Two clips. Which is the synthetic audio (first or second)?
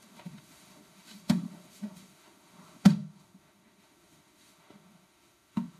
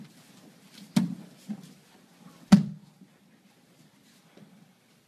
first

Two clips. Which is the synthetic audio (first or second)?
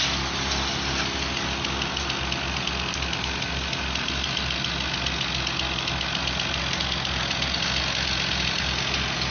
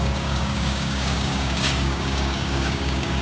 second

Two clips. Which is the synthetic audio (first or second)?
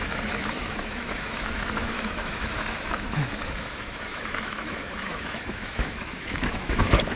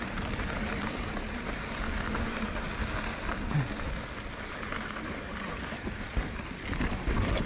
first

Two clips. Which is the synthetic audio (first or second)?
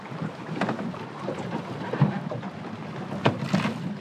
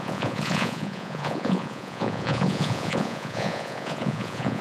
second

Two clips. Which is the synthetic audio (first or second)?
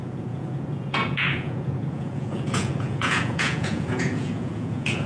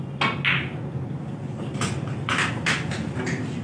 first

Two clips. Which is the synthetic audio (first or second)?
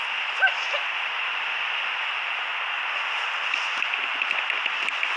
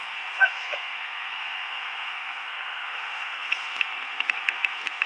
second